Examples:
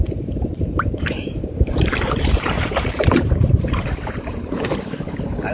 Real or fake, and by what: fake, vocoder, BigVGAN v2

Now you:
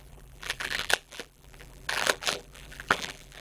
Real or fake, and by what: fake, vocoder, BigVGAN v2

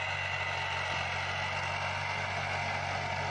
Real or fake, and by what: real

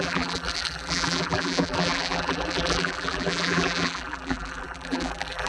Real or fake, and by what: fake, vocoder, BigVGAN v2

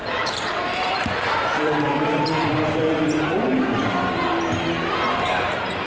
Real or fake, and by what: fake, vocoder, BigVGAN v2